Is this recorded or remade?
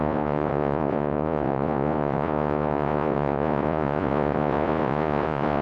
remade